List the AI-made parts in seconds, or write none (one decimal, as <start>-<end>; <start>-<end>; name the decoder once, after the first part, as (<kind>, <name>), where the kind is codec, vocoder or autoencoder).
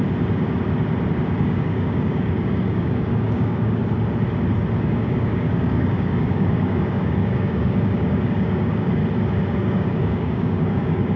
1.4-3.8 (codec, DAC); 4.9-9.0; 9.6-11.2